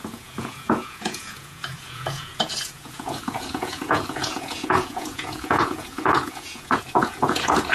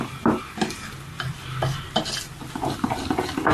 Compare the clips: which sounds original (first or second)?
second